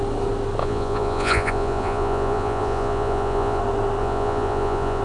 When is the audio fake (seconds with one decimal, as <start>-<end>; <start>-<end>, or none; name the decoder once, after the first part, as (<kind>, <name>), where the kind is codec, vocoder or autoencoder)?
0.6-3.6 (vocoder, Vocos); 4.0-5.0

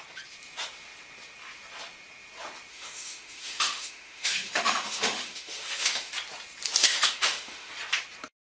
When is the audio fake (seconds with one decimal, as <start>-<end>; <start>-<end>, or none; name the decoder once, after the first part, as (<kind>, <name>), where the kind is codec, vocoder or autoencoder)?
2.7-6.1 (autoencoder, DAC-VAE); 6.8-7.7